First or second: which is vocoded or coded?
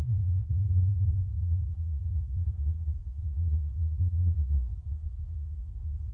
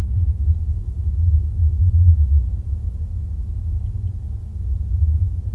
first